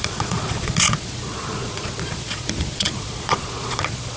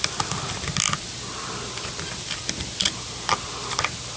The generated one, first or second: first